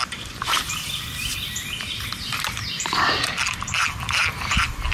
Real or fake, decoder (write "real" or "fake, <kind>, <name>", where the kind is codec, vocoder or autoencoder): fake, vocoder, BigVGAN v2